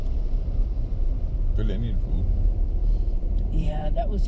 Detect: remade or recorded remade